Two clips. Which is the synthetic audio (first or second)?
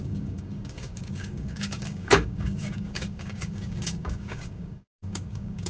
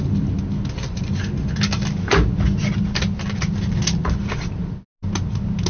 first